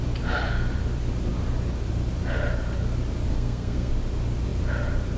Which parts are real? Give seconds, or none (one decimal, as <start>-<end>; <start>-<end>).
0.0-3.3; 3.9-5.2